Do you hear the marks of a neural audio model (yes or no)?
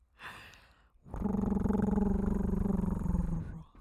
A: yes